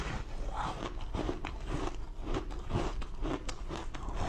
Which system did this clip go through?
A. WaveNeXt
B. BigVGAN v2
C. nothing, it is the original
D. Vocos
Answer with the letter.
C